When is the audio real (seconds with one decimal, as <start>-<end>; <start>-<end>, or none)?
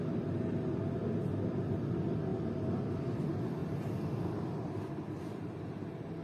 0.0-6.2